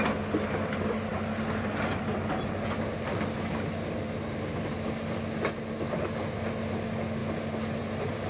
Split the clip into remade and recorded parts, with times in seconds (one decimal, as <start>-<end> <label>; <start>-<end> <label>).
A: 0.0-8.3 recorded